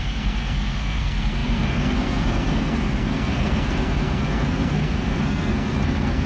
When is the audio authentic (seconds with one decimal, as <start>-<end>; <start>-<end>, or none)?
none